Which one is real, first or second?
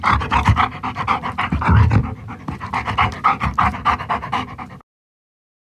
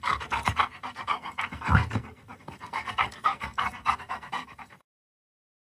first